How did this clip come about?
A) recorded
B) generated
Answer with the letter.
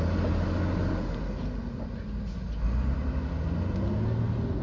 A